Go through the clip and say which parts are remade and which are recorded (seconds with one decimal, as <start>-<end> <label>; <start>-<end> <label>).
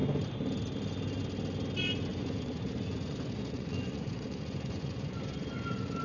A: 0.0-2.1 recorded; 2.1-6.0 remade